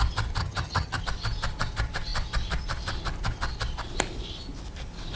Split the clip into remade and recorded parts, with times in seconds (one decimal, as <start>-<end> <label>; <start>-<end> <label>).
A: 0.0-0.4 recorded; 0.4-1.0 remade; 1.0-5.2 recorded